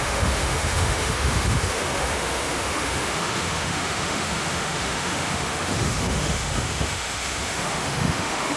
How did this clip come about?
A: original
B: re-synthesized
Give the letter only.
B